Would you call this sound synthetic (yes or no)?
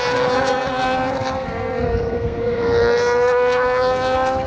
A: yes